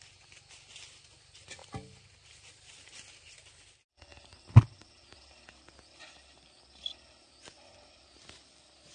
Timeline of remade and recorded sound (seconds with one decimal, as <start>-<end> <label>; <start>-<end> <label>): 0.0-8.9 recorded